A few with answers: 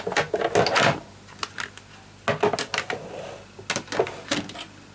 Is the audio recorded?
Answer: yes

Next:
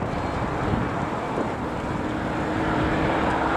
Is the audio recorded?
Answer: no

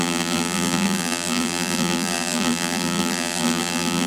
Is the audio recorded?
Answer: no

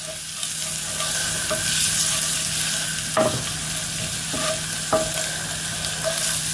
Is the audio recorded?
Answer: yes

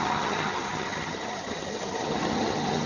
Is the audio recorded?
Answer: no